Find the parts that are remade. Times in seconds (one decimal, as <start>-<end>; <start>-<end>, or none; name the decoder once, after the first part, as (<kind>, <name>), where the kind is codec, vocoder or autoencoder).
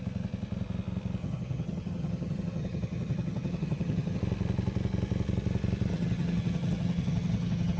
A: 1.2-4.2 (vocoder, HiFi-GAN); 5.9-7.8